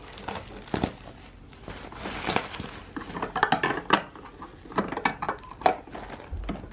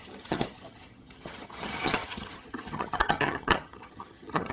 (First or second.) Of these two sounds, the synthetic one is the second